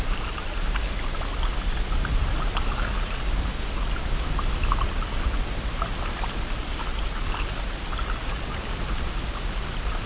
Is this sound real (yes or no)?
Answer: yes